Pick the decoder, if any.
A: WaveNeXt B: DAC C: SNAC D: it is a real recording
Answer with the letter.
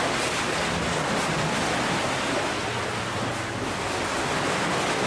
D